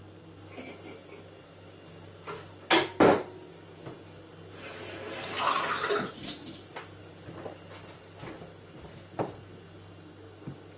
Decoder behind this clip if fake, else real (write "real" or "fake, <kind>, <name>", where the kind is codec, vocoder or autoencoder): real